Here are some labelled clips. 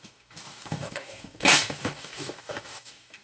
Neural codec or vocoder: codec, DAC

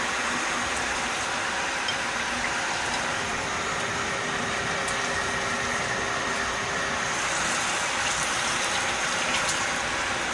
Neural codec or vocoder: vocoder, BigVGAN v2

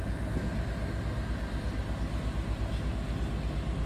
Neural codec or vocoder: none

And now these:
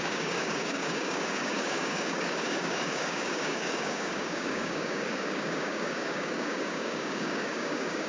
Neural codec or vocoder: codec, DAC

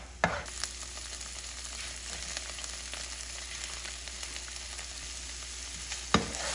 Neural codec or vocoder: none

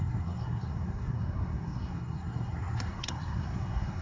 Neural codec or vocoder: codec, SNAC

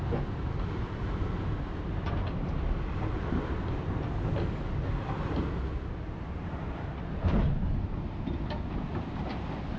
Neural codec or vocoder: none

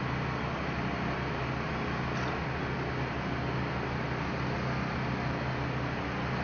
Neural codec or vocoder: none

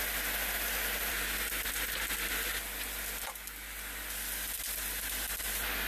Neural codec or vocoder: none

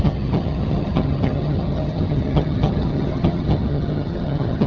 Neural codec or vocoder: vocoder, HiFi-GAN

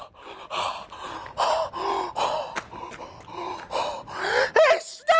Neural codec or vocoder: none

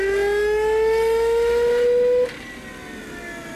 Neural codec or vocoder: none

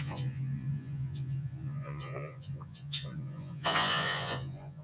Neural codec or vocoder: vocoder, Vocos